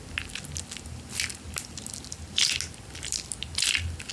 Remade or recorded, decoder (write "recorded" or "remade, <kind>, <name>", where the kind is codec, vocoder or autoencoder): recorded